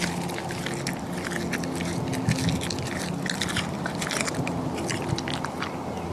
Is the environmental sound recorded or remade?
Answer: recorded